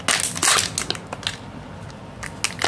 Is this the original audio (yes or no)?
yes